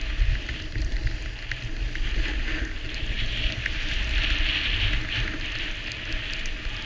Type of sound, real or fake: real